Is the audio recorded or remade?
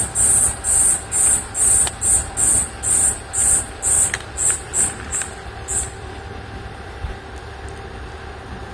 recorded